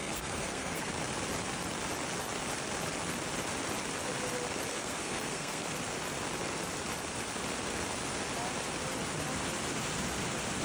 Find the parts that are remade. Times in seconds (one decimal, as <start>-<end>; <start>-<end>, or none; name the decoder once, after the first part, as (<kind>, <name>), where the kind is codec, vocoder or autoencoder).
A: 0.0-0.9 (codec, SNAC); 4.7-5.6